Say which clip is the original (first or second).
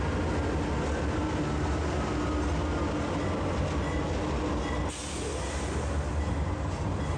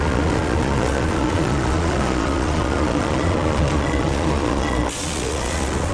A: first